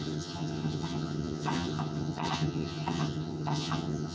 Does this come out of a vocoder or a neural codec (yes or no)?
yes